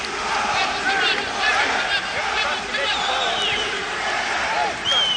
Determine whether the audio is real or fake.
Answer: real